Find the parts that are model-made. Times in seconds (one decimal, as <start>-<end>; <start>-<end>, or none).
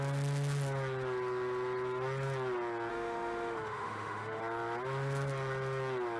2.9-4.4